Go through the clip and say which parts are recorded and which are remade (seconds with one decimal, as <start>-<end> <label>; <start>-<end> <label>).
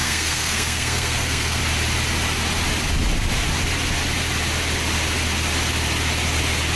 0.0-1.6 remade; 1.6-6.7 recorded